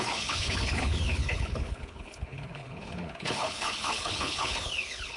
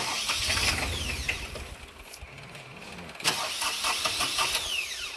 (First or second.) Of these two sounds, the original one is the second